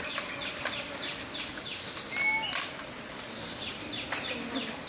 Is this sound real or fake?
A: real